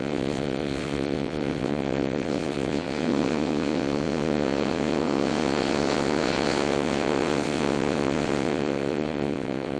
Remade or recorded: remade